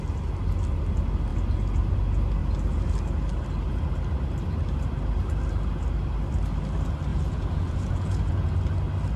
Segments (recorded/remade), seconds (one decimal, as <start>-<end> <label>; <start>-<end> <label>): 0.0-7.1 recorded; 7.1-8.5 remade; 8.5-9.2 recorded